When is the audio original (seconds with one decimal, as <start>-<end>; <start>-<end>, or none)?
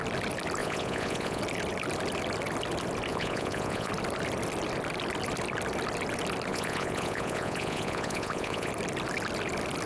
0.0-0.6; 1.4-3.1; 3.9-6.5; 8.7-9.9